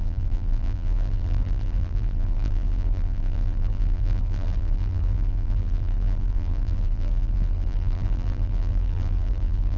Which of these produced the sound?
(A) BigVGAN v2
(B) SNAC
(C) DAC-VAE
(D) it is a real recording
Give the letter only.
A